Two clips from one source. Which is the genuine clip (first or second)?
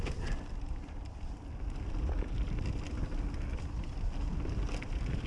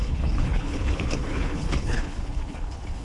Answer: first